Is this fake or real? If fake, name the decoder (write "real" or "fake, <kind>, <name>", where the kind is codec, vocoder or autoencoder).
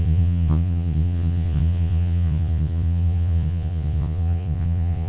fake, vocoder, Vocos